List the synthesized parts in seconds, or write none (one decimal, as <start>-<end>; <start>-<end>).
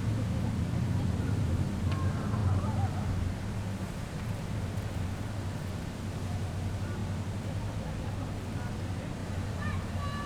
9.2-9.9